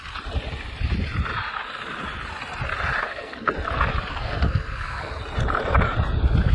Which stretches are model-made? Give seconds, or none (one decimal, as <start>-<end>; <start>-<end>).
3.0-3.5; 4.1-5.1

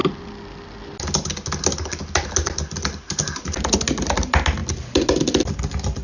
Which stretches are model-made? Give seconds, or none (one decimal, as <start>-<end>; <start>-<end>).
none